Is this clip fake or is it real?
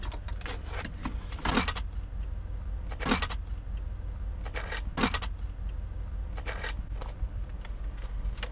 real